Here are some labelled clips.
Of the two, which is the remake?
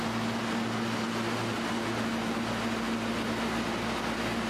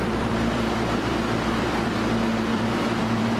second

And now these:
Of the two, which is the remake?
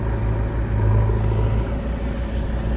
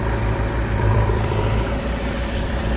second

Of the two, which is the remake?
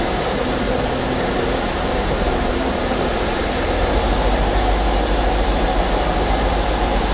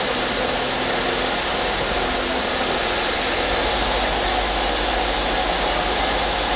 first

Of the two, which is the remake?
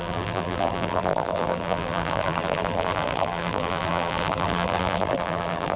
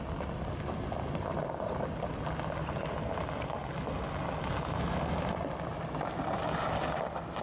first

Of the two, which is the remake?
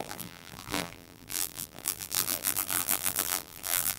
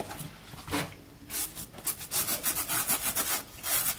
first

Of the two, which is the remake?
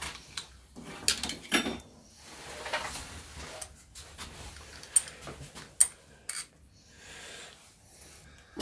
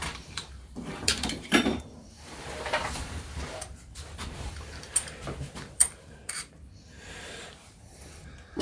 second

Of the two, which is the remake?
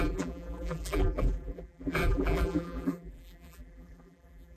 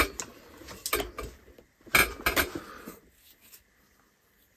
first